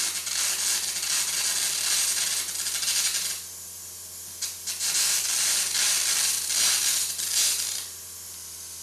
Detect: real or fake real